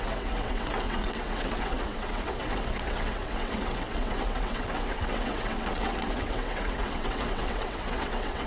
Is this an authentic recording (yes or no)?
no